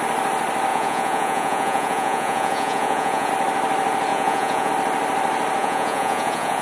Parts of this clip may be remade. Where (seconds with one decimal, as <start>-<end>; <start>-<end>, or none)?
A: 0.7-3.3; 4.1-4.7; 5.6-6.6